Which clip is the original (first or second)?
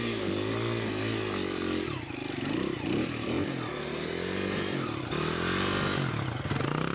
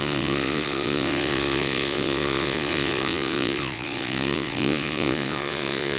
first